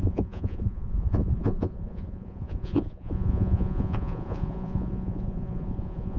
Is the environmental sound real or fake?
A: fake